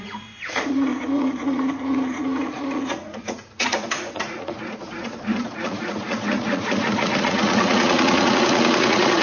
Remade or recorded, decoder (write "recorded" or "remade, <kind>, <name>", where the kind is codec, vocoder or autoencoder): remade, vocoder, Vocos